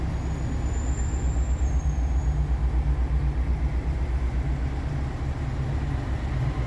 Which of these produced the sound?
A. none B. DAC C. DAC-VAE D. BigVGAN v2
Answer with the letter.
A